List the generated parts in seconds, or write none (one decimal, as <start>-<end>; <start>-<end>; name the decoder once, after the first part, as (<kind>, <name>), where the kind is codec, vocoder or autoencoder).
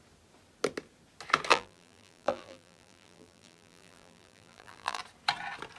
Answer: 1.5-5.0 (vocoder, BigVGAN v2)